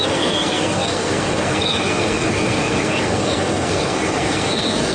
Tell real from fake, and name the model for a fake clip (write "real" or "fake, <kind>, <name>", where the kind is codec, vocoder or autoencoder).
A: fake, codec, SNAC